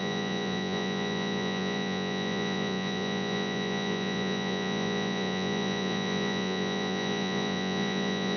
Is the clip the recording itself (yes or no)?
no